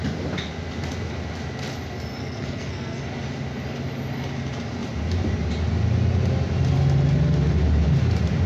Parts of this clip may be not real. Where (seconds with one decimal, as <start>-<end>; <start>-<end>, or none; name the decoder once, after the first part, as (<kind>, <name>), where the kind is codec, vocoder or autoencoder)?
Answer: 2.2-3.0 (codec, SNAC)